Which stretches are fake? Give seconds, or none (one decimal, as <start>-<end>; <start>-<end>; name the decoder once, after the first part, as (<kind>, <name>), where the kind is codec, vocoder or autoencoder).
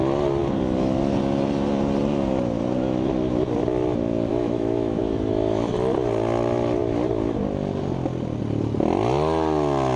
4.3-5.0 (autoencoder, DAC-VAE)